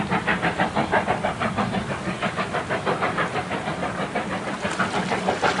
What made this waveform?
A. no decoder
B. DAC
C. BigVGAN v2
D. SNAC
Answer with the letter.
A